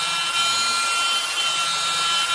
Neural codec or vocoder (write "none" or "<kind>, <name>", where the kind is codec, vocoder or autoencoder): none